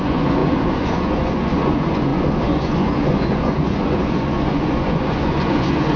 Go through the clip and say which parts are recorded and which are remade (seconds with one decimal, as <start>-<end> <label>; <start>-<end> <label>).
0.0-6.0 remade